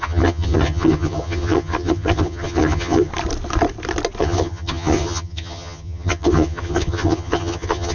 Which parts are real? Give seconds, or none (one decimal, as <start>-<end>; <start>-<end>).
3.1-4.2